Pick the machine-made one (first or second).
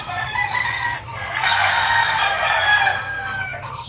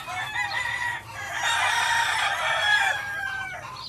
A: first